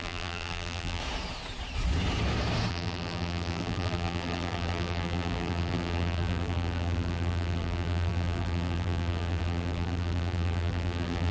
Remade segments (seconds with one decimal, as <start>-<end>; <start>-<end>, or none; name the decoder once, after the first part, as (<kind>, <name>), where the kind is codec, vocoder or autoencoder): 0.0-1.0 (vocoder, BigVGAN v2); 2.7-11.3